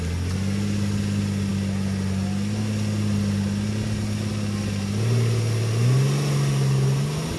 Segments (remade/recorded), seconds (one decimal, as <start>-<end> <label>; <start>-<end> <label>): 0.0-7.4 recorded